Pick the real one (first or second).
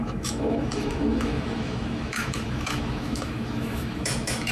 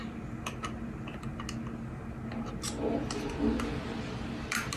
second